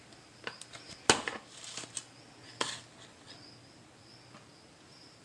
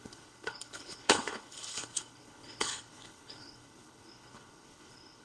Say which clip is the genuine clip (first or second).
first